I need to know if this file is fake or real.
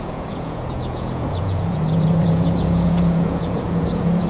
fake